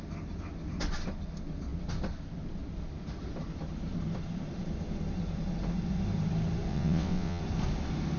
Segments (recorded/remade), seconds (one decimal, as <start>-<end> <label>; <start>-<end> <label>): 0.0-6.7 recorded; 6.7-7.4 remade; 7.4-8.2 recorded